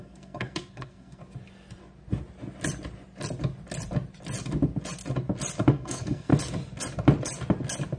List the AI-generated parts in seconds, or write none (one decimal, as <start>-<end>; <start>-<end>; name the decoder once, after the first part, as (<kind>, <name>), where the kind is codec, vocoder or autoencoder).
0.0-1.2 (codec, SNAC); 5.7-6.3

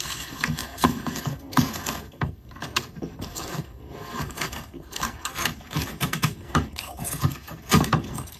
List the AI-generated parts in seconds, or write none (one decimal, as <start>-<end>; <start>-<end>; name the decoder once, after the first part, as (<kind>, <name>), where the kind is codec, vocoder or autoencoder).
0.0-8.4 (codec, SNAC)

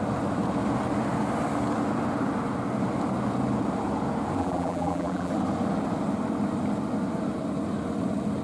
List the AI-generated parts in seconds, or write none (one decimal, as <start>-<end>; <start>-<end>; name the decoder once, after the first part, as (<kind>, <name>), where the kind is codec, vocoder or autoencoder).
4.4-5.3 (vocoder, BigVGAN v2)